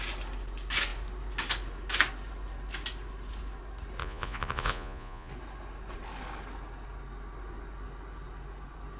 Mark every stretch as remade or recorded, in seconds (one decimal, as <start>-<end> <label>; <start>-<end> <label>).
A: 0.0-4.0 recorded; 4.0-5.3 remade; 5.3-9.0 recorded